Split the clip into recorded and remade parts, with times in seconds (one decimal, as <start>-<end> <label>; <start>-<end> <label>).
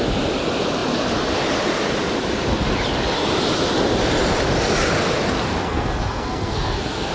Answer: 0.0-5.6 recorded; 5.6-7.1 remade